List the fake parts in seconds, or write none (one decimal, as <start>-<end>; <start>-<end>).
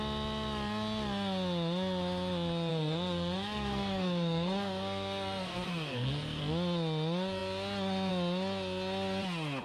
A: 2.7-6.4